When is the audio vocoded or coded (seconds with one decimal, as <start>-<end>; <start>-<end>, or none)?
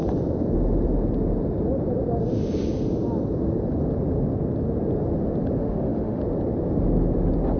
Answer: 5.6-6.2